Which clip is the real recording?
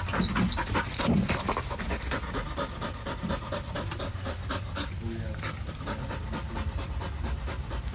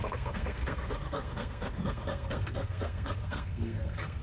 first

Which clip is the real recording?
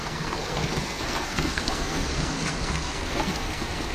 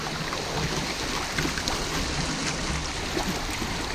second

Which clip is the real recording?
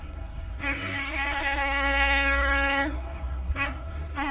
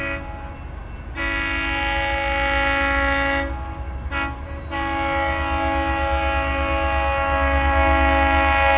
second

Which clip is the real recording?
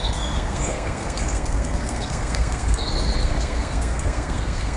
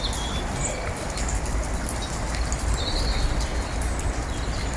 second